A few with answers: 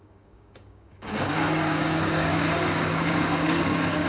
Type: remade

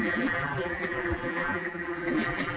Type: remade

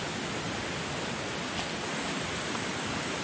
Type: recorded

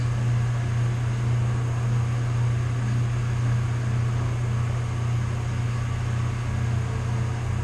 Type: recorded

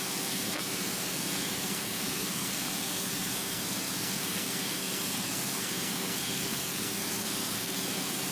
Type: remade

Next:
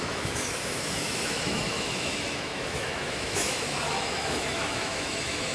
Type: remade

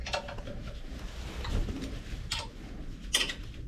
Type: recorded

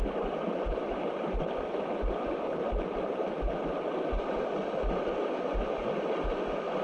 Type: recorded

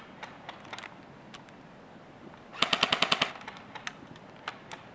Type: recorded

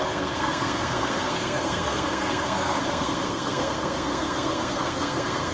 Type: remade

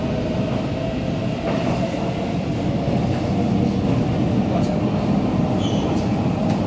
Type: recorded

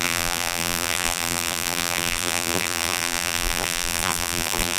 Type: remade